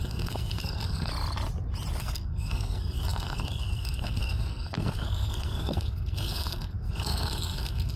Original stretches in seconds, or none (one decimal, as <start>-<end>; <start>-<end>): 1.1-2.0